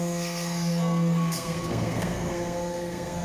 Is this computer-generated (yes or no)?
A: yes